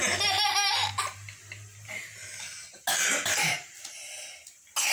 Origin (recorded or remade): recorded